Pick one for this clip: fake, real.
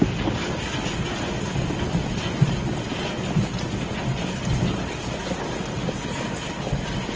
real